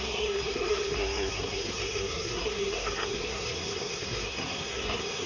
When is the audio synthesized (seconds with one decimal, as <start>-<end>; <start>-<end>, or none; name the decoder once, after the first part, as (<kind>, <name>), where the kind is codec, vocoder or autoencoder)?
0.0-5.3 (codec, SNAC)

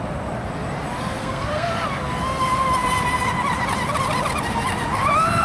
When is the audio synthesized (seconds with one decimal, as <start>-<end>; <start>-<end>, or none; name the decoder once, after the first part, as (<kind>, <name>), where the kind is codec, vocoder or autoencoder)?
1.2-1.7 (codec, SNAC)

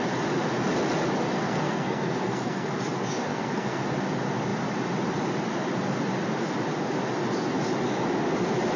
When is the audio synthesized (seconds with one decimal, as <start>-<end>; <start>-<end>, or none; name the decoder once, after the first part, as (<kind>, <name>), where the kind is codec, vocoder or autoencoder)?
1.4-2.7 (codec, SNAC); 3.3-3.8

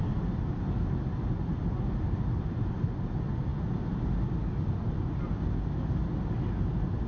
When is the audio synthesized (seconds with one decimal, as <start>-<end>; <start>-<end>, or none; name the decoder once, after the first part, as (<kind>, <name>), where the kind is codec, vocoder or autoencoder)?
none

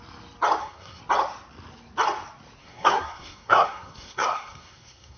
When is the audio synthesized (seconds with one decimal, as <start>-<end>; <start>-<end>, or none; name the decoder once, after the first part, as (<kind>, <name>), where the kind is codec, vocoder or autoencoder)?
0.6-1.0 (codec, SNAC); 2.6-5.2

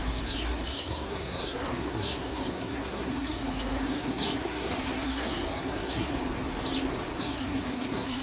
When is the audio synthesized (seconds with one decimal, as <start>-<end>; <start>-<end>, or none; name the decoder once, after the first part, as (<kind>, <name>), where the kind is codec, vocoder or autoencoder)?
0.0-6.1 (codec, SNAC); 7.2-8.2

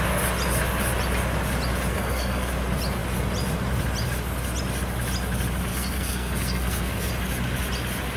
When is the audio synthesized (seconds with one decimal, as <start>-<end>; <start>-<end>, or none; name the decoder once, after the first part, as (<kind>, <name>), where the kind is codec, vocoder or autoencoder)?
1.9-2.5 (codec, SNAC); 5.7-7.1

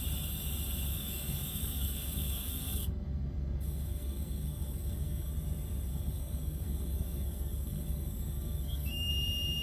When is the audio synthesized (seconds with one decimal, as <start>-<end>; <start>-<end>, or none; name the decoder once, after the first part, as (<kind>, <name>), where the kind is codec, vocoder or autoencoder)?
0.9-5.3 (codec, SNAC); 5.9-9.1